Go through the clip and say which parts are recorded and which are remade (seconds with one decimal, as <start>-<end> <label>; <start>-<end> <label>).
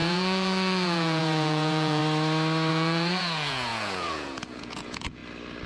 0.0-2.0 remade; 2.0-2.7 recorded; 2.7-5.2 remade; 5.2-5.7 recorded